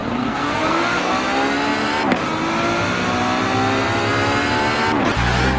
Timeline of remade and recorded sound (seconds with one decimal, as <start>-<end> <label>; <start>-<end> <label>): 0.0-1.1 remade; 1.1-5.6 recorded